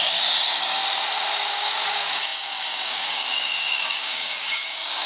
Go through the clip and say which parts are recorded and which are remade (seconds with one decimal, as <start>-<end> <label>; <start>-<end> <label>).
0.0-0.8 remade; 0.8-1.5 recorded; 1.5-5.1 remade